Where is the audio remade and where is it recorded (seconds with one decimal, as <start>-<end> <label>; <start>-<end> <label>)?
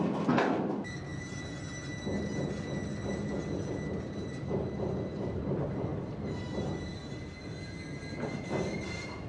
0.0-9.3 recorded